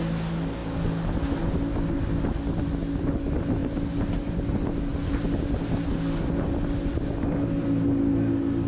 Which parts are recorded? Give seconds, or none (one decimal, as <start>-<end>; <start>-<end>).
0.0-8.7